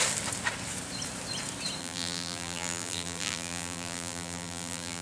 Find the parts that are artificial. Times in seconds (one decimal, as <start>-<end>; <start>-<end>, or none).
1.8-5.0